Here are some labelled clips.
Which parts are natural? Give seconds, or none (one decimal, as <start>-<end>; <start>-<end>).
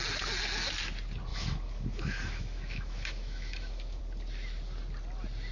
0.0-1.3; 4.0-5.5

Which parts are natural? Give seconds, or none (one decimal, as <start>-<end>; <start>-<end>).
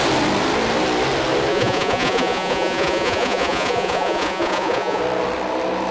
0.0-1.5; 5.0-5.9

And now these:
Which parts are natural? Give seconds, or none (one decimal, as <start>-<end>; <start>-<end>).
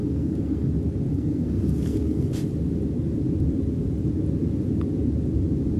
0.7-1.1; 2.3-5.8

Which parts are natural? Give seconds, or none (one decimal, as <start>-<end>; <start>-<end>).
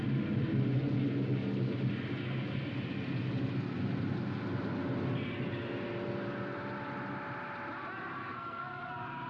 0.0-8.2; 8.8-9.3